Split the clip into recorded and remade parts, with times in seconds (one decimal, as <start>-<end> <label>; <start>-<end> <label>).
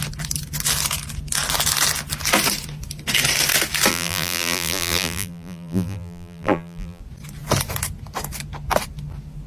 0.0-3.9 recorded; 3.9-7.0 remade; 7.0-9.5 recorded